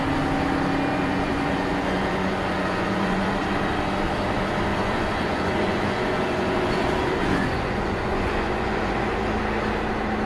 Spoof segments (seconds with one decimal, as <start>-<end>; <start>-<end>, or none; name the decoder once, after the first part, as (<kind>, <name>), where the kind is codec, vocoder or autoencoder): 0.9-3.3 (vocoder, Vocos); 4.7-9.1